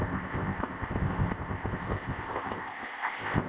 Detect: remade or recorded remade